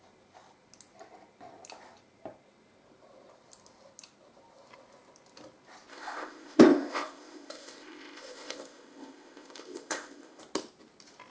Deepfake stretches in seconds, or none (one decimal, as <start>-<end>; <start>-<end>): 5.9-10.4